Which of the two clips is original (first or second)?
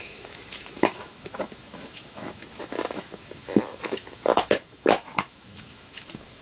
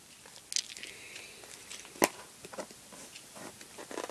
second